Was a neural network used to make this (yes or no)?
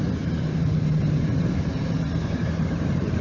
yes